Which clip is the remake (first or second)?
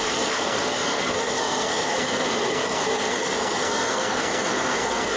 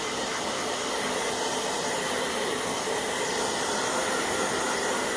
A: first